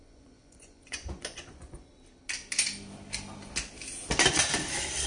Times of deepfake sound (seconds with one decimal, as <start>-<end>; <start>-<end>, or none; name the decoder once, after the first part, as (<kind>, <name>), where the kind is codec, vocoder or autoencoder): 0.0-1.9 (vocoder, Vocos)

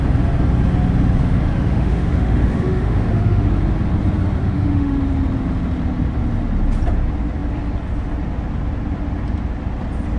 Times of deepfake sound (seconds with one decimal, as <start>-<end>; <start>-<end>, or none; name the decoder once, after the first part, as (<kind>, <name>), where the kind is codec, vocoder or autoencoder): 1.2-3.5 (autoencoder, DAC-VAE); 4.4-5.0

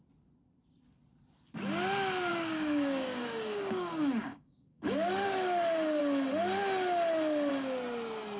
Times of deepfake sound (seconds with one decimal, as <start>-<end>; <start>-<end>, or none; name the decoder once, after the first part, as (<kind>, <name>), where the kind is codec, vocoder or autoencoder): 2.3-6.0 (codec, DAC)